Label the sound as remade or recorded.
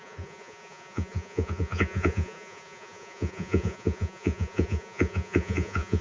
remade